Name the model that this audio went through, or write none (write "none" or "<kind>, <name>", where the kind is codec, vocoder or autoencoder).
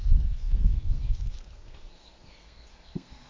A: codec, SNAC